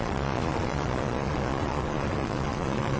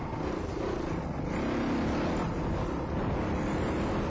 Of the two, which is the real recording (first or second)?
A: second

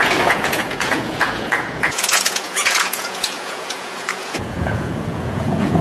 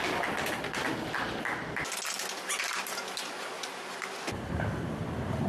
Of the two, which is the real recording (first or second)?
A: second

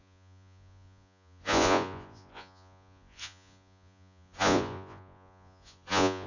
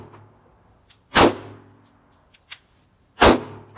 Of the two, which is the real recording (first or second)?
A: second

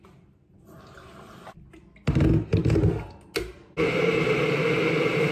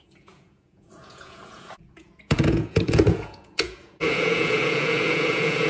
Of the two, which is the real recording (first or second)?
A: first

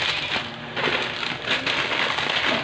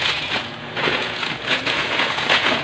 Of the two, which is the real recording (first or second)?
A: first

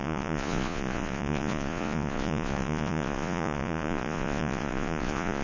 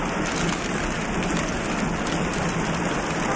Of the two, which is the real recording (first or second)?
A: second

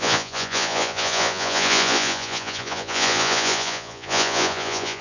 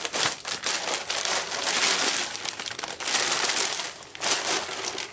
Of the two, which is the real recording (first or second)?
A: second